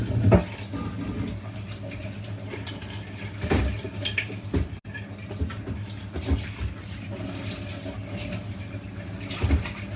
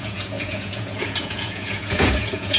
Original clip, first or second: first